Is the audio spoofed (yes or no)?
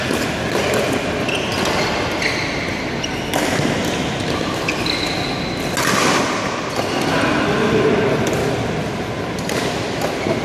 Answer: no